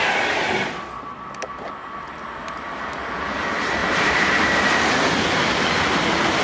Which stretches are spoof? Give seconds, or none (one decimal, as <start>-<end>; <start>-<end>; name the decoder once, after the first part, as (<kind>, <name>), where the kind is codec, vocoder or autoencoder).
3.8-4.9 (vocoder, BigVGAN v2)